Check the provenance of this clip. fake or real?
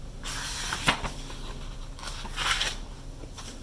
real